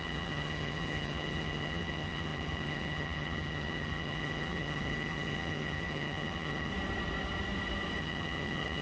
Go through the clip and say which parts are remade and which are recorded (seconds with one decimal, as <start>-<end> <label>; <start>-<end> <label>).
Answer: 0.0-6.7 remade; 6.7-8.0 recorded; 8.0-8.8 remade